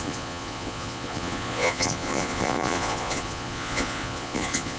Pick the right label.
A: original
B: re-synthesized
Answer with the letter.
B